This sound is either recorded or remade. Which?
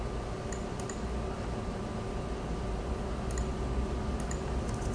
recorded